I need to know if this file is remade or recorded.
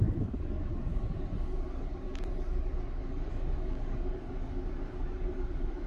remade